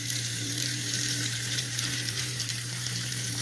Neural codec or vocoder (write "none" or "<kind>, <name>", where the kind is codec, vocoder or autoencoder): vocoder, BigVGAN v2